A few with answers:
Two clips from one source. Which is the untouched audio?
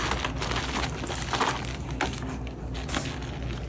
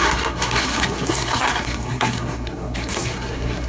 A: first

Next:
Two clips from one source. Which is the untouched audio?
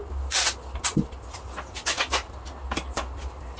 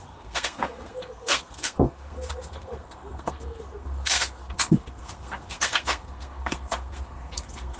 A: first